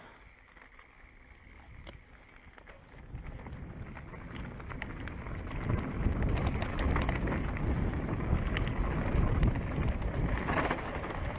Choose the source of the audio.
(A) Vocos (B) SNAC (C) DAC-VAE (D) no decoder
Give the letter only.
D